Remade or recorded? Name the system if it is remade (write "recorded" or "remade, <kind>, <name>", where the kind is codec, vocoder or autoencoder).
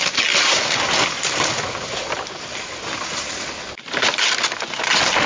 recorded